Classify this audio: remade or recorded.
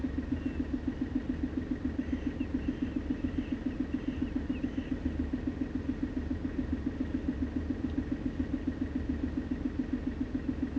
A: recorded